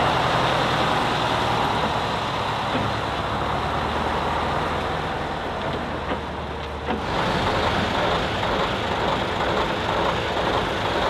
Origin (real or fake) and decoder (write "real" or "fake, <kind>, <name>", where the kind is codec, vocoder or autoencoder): real